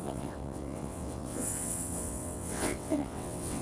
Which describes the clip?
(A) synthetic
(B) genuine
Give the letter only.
A